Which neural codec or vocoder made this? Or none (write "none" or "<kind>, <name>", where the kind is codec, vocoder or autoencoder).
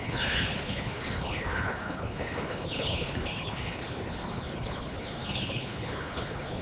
codec, HILCodec